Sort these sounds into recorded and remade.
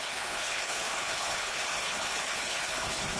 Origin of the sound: remade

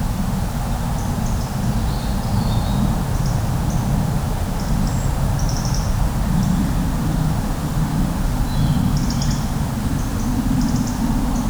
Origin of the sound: recorded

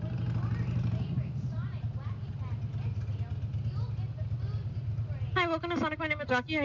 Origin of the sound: recorded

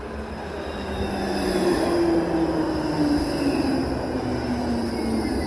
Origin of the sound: recorded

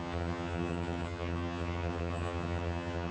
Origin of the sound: remade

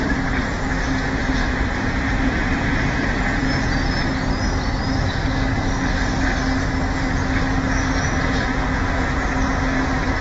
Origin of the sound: recorded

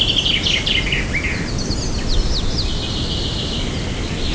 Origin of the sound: recorded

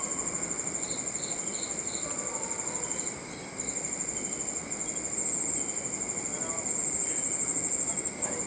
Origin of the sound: recorded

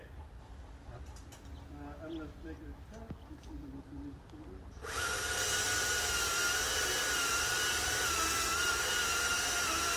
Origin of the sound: recorded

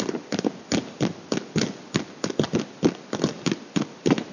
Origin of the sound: recorded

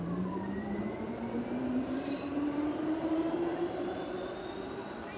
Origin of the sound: remade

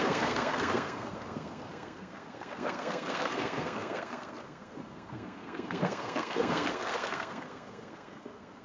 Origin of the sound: remade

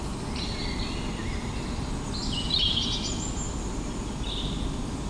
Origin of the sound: recorded